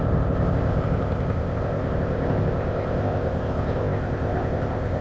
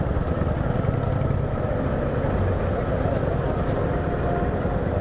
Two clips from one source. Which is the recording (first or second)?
second